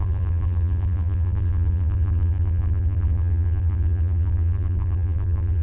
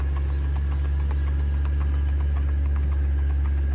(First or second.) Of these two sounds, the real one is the second